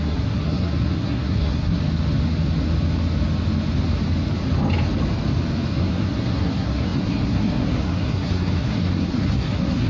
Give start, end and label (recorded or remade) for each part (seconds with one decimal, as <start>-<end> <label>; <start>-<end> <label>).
0.0-1.8 remade; 1.8-5.7 recorded; 5.7-9.9 remade